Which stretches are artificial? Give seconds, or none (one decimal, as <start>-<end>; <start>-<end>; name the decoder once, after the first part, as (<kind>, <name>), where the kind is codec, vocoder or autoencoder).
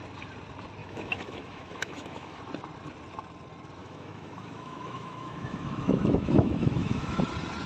0.8-2.4 (autoencoder, DAC-VAE); 3.8-7.2